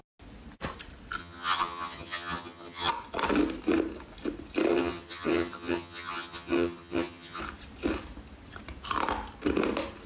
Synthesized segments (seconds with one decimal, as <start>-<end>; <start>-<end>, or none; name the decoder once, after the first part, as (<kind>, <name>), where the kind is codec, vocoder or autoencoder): 1.2-2.9 (vocoder, HiFi-GAN); 4.7-7.4